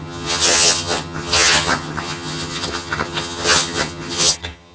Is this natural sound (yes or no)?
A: no